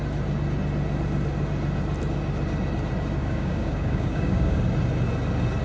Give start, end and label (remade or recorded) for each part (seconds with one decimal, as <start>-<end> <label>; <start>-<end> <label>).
0.0-3.2 recorded; 3.2-4.6 remade; 4.6-5.6 recorded